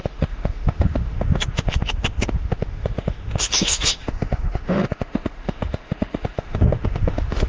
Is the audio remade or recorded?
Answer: remade